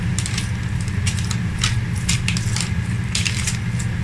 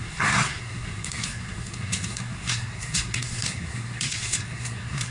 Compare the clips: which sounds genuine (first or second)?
first